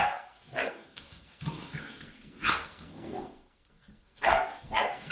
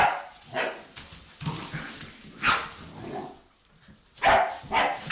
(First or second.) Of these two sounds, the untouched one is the second